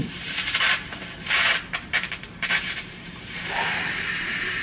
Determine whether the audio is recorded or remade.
remade